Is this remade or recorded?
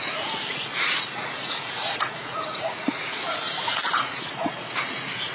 remade